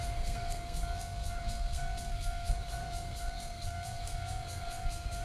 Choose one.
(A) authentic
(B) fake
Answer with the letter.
B